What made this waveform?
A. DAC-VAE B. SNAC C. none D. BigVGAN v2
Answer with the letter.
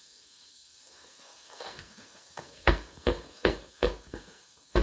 B